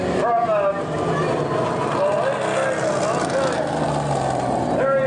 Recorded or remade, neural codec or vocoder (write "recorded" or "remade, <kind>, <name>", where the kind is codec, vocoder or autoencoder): recorded